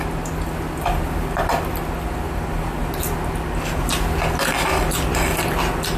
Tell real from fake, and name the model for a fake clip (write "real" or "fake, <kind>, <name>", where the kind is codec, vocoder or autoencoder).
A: real